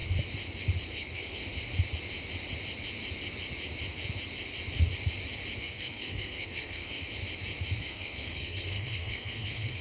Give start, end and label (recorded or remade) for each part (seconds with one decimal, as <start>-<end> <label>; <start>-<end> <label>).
0.0-0.9 recorded; 0.9-1.4 remade; 1.4-5.6 recorded; 5.6-7.1 remade; 7.1-7.8 recorded; 7.8-9.8 remade